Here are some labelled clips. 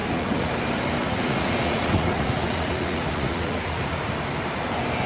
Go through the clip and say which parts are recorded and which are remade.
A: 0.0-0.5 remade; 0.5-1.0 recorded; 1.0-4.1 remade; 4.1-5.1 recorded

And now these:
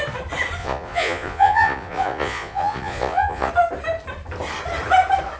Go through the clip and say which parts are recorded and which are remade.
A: 0.0-0.6 recorded; 0.6-3.5 remade; 3.5-5.4 recorded

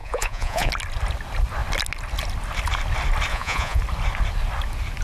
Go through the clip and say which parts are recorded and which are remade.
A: 0.0-0.7 remade; 0.7-3.3 recorded; 3.3-3.8 remade; 3.8-5.0 recorded

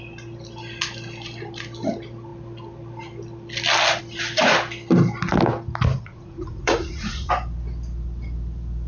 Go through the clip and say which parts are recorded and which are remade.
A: 0.0-5.9 recorded; 5.9-7.3 remade; 7.3-8.9 recorded

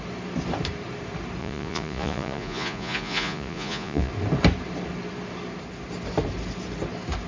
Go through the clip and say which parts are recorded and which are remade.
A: 0.0-1.4 recorded; 1.4-4.1 remade; 4.1-7.3 recorded

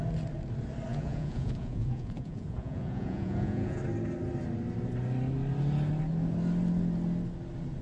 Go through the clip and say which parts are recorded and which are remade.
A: 0.0-0.9 recorded; 0.9-3.8 remade; 3.8-7.8 recorded

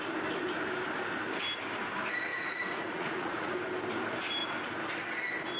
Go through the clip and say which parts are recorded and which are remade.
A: 0.0-2.3 recorded; 2.3-3.5 remade; 3.5-5.6 recorded